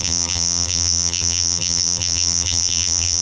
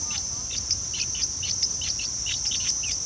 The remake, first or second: first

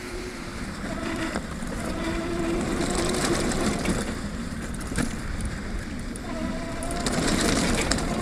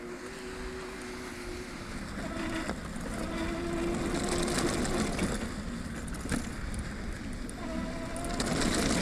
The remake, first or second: first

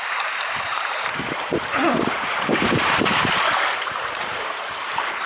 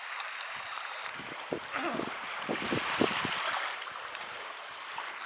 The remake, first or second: first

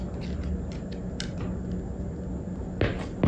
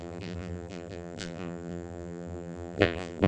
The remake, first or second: second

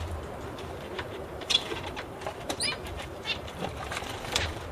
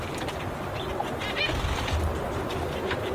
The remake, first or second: first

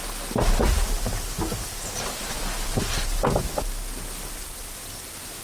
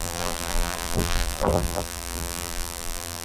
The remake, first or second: second